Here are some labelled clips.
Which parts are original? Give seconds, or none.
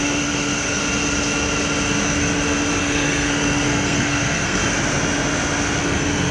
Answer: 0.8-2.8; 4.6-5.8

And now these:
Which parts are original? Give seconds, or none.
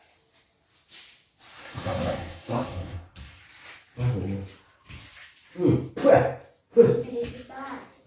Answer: 0.0-1.6; 3.4-8.1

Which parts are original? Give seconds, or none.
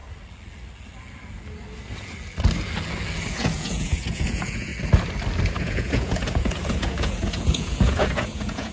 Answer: 0.0-3.3; 4.7-5.6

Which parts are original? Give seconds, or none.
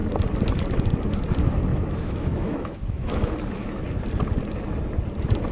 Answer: 0.0-1.7; 3.8-5.5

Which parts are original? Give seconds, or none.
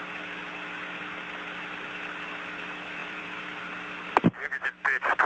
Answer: 0.0-3.0; 3.6-5.3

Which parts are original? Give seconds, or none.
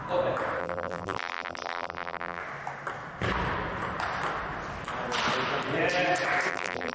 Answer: 0.0-0.6; 2.4-6.5